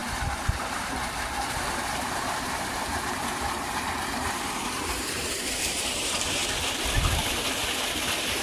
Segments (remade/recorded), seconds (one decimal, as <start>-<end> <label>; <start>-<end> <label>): 0.0-6.4 remade; 6.4-7.2 recorded; 7.2-8.4 remade